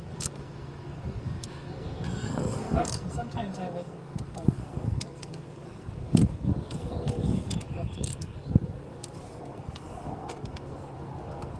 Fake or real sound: fake